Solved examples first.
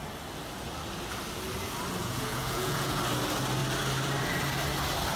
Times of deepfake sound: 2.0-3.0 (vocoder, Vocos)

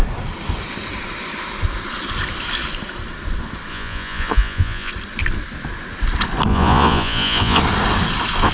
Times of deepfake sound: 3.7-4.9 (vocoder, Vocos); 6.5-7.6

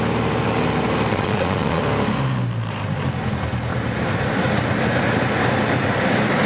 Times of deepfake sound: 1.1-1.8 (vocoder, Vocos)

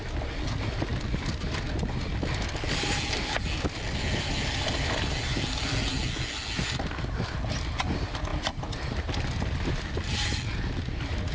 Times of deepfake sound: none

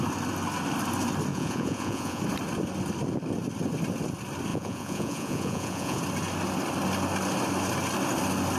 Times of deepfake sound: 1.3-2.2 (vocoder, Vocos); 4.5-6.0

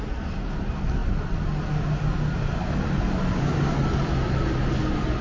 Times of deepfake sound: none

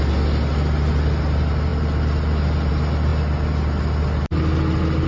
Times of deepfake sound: none

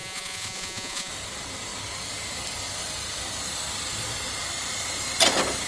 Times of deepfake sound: 0.0-1.1 (vocoder, Vocos)